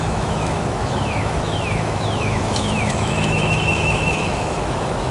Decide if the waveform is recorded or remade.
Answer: remade